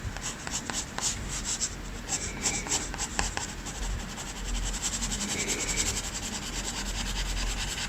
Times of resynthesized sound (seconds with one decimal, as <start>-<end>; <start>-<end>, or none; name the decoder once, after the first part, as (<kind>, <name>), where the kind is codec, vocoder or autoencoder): 3.1-3.8 (vocoder, BigVGAN v2)